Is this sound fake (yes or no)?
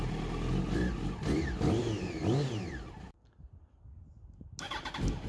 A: no